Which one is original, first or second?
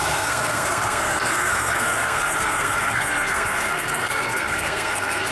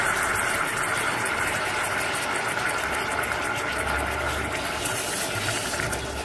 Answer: second